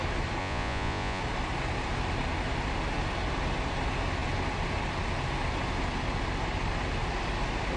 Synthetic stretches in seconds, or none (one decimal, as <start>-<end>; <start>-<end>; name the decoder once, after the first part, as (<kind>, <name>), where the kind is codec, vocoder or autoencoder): 0.4-1.2 (vocoder, Vocos)